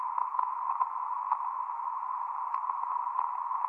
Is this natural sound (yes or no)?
yes